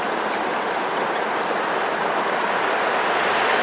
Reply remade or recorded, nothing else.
recorded